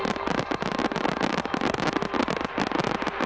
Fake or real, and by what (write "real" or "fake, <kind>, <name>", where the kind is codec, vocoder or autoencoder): fake, vocoder, BigVGAN v2